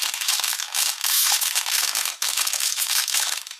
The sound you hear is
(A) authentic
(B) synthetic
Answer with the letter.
B